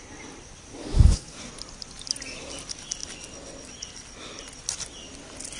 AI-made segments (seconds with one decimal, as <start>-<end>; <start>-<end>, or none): 0.8-1.5